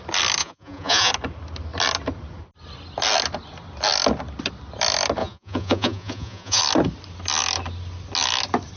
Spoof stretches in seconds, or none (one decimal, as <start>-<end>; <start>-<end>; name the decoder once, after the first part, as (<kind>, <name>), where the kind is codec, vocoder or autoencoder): 0.4-1.1 (vocoder, Vocos); 5.2-6.6